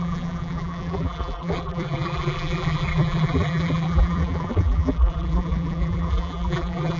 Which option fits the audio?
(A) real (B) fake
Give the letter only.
B